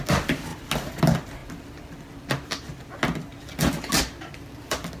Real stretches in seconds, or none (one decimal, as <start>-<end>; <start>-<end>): 0.0-1.4; 2.9-3.3

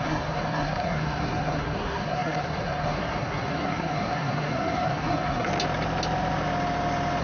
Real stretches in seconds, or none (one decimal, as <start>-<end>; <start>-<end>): 5.5-7.2

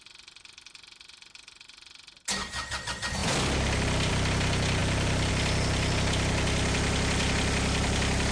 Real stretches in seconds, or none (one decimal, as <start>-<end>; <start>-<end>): 0.0-8.3

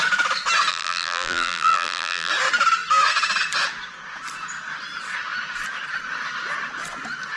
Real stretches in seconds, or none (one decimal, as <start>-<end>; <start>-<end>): 0.0-0.7; 2.3-7.4

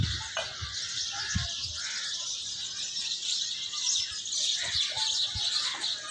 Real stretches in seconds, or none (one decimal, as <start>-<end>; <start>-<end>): 0.0-6.1

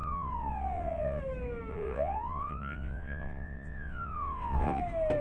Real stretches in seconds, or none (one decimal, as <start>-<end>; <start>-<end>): 1.2-1.7; 4.8-5.2